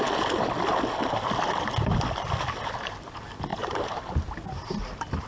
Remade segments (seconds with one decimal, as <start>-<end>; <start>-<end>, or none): 3.5-4.0